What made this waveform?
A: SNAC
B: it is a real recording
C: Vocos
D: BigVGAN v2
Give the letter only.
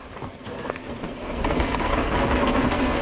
A